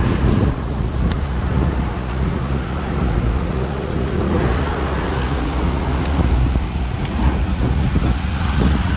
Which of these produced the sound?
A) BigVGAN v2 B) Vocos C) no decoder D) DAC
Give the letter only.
B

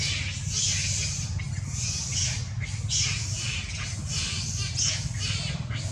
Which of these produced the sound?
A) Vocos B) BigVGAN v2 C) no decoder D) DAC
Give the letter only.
C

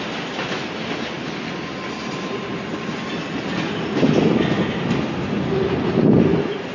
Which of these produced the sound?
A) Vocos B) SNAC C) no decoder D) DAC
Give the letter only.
C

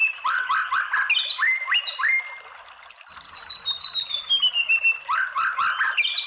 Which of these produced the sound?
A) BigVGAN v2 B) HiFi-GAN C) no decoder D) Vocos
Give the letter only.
C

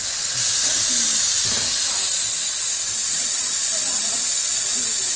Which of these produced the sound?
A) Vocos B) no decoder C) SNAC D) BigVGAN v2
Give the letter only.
B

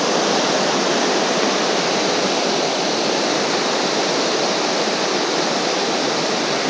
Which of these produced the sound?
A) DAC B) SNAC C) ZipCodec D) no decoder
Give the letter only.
D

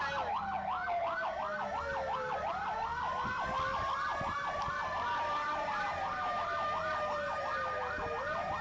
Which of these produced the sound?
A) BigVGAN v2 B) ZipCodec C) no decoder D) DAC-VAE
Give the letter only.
C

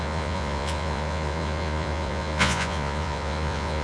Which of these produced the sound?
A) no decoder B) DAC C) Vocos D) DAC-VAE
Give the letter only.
C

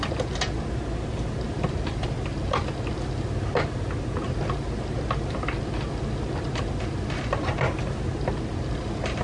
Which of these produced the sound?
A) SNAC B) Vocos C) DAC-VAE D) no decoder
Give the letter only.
D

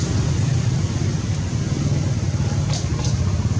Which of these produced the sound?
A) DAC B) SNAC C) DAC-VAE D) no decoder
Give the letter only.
D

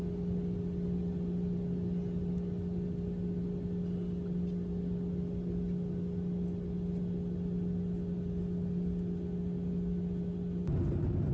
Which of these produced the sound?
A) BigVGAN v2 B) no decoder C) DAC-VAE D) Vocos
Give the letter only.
B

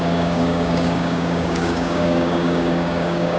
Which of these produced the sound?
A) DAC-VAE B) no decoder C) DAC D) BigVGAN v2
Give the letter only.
C